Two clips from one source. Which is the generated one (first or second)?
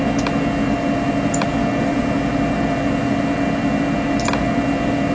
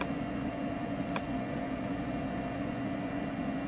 second